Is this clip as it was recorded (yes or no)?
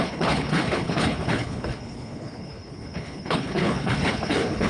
no